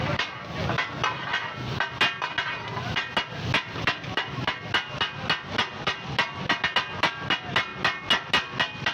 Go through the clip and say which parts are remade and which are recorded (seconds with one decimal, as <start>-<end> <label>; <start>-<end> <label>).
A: 0.0-8.9 recorded

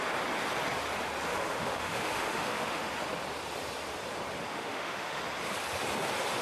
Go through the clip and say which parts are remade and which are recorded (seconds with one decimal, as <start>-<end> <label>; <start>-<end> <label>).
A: 0.0-1.3 recorded; 1.3-2.9 remade; 2.9-4.5 recorded; 4.5-5.2 remade; 5.2-6.4 recorded

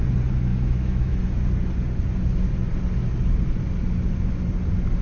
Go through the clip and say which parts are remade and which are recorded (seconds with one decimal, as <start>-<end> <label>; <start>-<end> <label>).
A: 0.0-0.5 recorded; 0.5-1.2 remade; 1.2-5.0 recorded

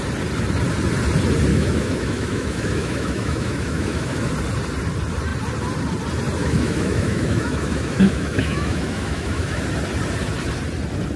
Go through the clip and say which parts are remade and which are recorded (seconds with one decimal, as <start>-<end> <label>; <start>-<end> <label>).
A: 0.0-1.5 recorded; 1.5-4.3 remade; 4.3-6.4 recorded; 6.4-9.6 remade; 9.6-11.2 recorded